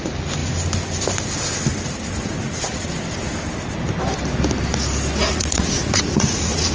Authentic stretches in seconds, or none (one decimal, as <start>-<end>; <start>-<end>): 0.0-2.2; 2.9-5.2